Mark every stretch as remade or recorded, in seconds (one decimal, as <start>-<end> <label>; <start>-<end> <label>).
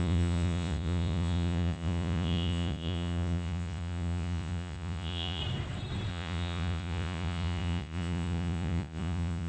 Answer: 0.0-5.4 remade; 5.4-6.1 recorded; 6.1-9.5 remade